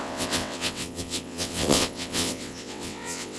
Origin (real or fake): fake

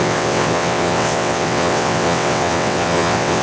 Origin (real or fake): fake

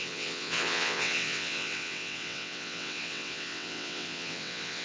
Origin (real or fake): fake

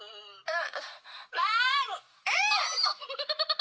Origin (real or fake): real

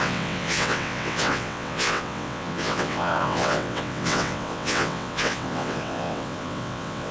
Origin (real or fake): fake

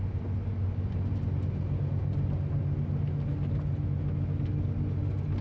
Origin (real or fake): real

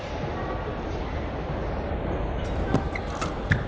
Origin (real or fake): real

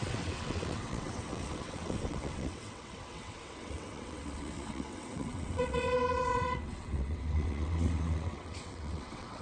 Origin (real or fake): fake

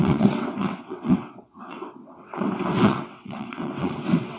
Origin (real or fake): fake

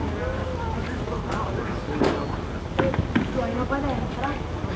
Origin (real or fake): real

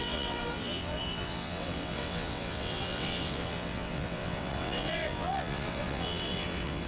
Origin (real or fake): fake